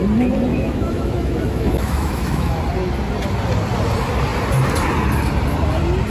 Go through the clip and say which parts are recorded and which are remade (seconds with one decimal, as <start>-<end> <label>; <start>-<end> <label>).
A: 0.0-0.5 recorded; 0.5-2.6 remade; 2.6-6.1 recorded